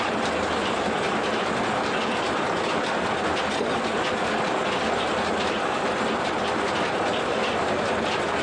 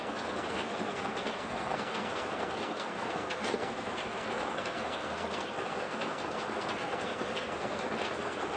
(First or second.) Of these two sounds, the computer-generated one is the second